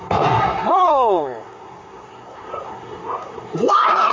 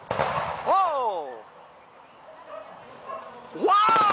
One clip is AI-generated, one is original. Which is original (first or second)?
second